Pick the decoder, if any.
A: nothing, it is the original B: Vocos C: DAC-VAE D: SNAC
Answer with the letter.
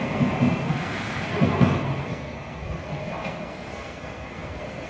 D